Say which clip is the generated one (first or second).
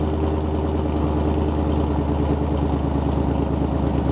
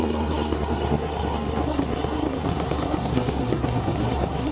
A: second